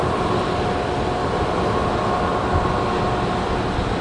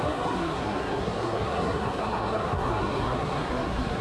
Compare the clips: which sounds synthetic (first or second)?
second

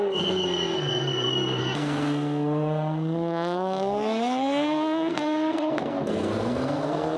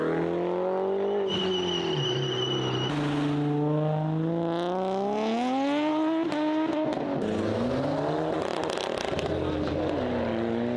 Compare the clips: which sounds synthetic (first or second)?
first